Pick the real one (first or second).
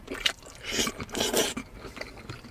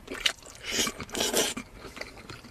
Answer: first